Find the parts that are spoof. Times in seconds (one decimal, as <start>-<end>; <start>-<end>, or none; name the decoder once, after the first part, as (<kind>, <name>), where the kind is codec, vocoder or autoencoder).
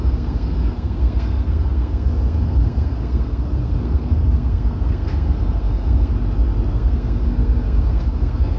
0.0-6.1 (codec, SNAC); 6.7-8.6